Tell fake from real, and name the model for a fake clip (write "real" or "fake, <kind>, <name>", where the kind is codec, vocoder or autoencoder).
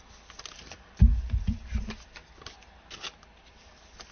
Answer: real